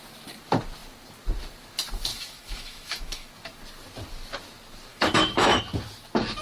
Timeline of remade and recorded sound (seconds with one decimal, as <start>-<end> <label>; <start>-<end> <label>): 0.0-2.1 recorded; 2.1-3.3 remade; 3.3-4.9 recorded; 4.9-5.6 remade; 5.6-6.4 recorded